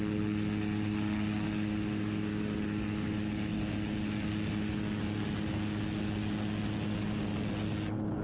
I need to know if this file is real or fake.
real